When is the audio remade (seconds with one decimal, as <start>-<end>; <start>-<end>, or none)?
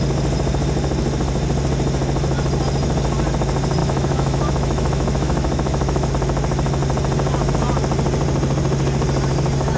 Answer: 3.8-6.1